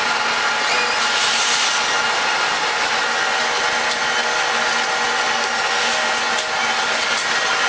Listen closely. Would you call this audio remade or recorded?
recorded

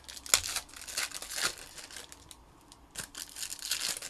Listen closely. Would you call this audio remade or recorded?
recorded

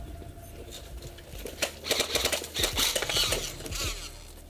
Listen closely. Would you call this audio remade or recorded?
recorded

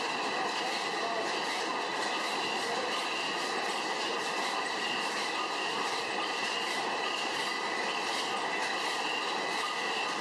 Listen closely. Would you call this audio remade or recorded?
recorded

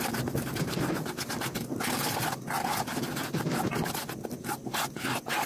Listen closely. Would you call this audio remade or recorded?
recorded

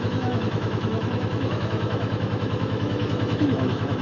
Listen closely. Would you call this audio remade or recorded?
remade